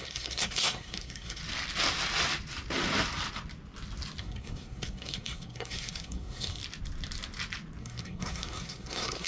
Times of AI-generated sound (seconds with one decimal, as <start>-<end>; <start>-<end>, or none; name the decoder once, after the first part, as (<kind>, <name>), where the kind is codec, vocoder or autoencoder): 0.0-1.4 (codec, SNAC); 4.2-6.6; 7.8-9.3